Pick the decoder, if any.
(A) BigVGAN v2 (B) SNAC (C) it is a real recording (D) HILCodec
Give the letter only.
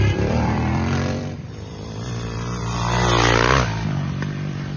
A